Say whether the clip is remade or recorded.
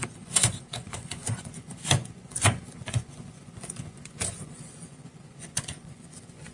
remade